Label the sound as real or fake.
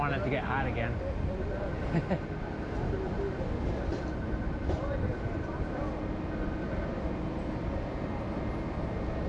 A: real